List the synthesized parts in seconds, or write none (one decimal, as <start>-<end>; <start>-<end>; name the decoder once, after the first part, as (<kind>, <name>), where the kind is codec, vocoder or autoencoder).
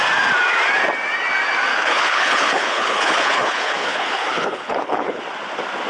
1.7-5.2 (codec, HILCodec)